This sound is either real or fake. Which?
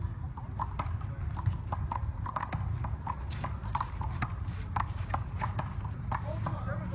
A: real